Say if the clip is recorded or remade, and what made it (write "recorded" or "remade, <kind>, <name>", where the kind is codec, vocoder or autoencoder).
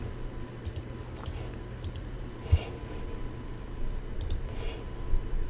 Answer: recorded